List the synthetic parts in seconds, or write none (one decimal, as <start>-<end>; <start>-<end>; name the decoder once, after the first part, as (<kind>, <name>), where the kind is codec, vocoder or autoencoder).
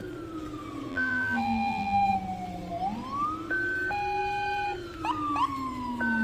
0.9-2.0 (vocoder, BigVGAN v2)